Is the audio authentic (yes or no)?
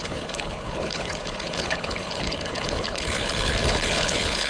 no